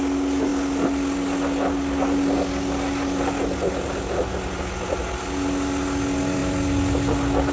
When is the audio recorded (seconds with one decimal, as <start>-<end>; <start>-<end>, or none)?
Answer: 0.0-7.5